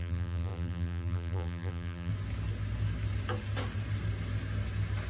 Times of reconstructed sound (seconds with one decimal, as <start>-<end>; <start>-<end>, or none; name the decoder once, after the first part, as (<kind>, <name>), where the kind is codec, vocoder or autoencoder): 0.0-2.1 (vocoder, BigVGAN v2)